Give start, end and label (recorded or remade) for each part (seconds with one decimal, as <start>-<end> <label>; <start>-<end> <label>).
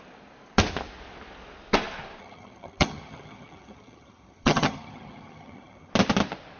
0.0-2.2 recorded; 2.2-5.9 remade; 5.9-6.6 recorded